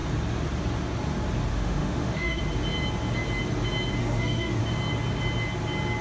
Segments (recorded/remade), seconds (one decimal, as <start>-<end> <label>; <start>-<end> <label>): 0.0-1.5 recorded; 1.5-2.4 remade; 2.4-4.0 recorded; 4.0-4.6 remade; 4.6-6.0 recorded